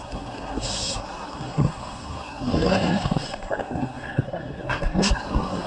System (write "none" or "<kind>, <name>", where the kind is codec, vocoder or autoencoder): codec, SNAC